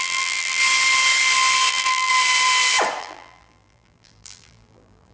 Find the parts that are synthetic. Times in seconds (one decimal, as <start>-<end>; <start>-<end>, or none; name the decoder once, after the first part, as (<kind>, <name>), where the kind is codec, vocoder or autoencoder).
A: 0.0-0.6 (vocoder, BigVGAN v2); 1.7-2.1; 3.0-5.1